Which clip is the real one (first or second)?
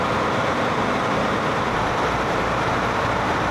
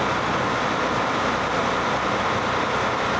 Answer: second